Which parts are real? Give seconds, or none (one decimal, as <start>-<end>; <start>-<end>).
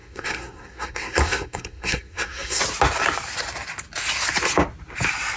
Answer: 2.6-5.4